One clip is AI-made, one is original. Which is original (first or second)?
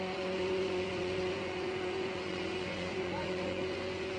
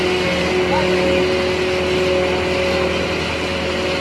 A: second